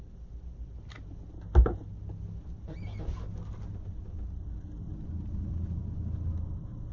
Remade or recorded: recorded